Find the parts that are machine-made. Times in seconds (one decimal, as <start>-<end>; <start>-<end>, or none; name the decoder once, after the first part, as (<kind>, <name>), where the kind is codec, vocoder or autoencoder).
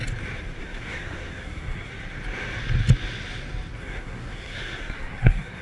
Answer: 0.6-1.9 (codec, SNAC); 3.8-5.6